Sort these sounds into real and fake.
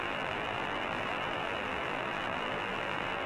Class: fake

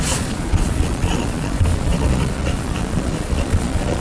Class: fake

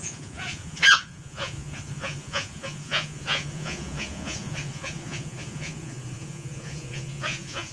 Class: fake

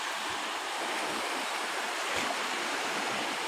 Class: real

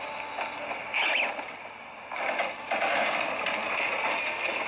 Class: real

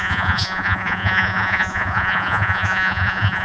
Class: fake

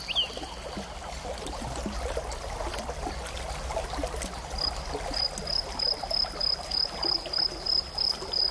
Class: real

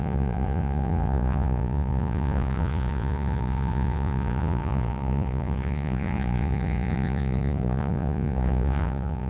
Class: fake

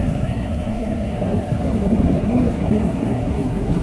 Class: fake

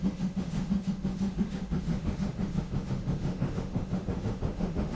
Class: fake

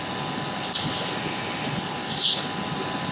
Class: real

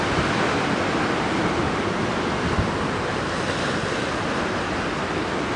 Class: real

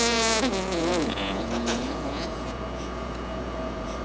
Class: fake